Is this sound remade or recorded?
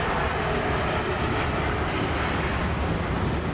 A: recorded